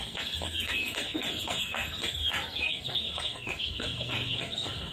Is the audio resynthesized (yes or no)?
yes